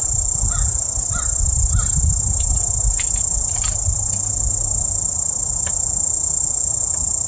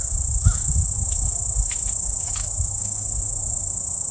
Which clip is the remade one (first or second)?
second